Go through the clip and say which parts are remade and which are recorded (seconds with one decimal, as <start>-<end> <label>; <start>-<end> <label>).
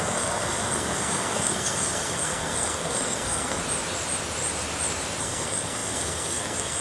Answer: 0.0-3.6 remade; 3.6-5.2 recorded; 5.2-6.8 remade